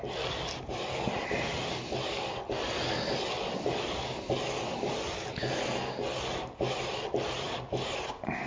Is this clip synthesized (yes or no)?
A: no